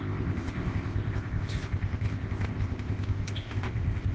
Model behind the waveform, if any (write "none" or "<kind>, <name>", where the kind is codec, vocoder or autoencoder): codec, ZipCodec